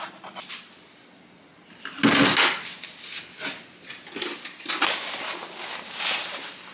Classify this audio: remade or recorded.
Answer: recorded